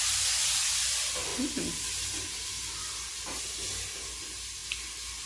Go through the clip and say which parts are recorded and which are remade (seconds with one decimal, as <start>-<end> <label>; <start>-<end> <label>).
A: 0.0-5.3 recorded